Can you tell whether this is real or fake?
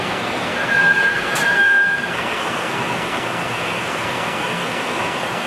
fake